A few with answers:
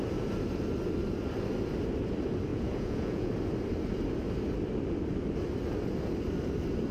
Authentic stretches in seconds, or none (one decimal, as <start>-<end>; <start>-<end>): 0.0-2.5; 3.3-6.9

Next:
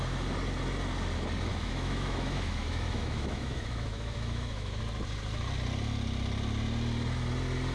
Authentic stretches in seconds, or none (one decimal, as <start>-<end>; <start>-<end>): 0.0-1.5; 4.8-7.7

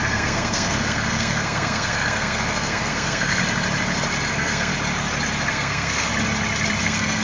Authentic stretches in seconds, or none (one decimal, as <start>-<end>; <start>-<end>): 3.4-4.3; 4.7-5.5; 6.1-6.8

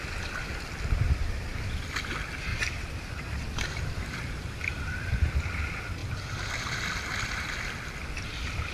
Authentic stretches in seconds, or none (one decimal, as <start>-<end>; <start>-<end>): 0.0-2.5; 4.6-6.0; 6.5-8.7

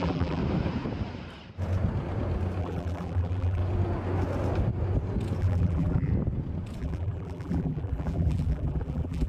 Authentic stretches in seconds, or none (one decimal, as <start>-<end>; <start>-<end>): 0.4-2.6; 3.6-5.4; 6.1-6.8